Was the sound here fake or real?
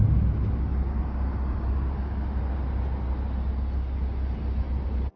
real